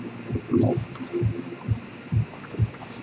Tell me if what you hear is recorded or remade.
recorded